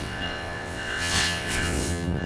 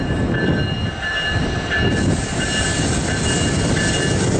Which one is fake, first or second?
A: first